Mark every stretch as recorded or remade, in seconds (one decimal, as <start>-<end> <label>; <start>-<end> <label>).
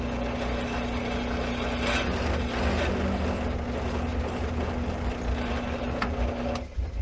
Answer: 0.0-7.0 recorded